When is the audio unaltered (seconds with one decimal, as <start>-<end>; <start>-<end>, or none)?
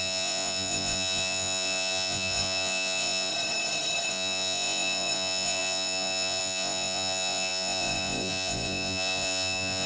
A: 3.3-4.1